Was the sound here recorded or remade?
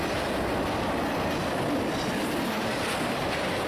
recorded